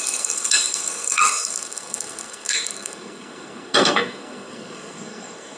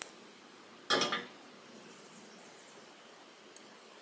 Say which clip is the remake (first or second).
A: first